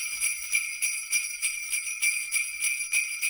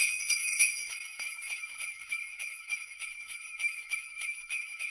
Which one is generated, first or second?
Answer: second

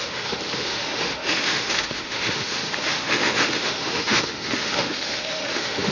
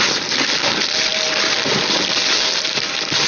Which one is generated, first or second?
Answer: first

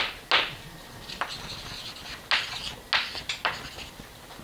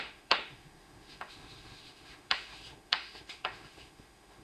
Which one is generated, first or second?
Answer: second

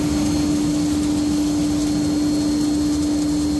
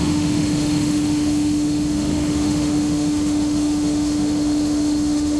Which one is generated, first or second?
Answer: second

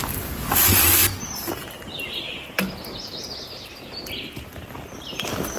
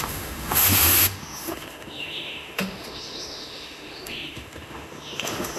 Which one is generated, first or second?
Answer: second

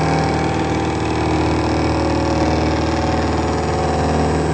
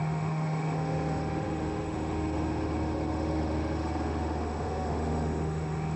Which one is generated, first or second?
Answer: second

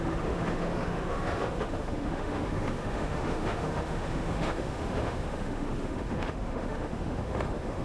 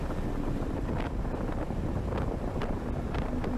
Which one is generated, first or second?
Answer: first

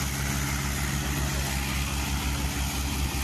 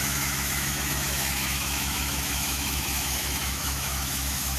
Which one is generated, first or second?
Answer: second